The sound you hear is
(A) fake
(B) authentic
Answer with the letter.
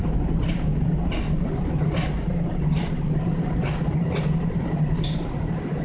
B